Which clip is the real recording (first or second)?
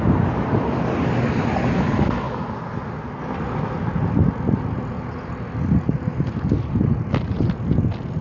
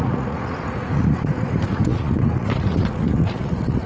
first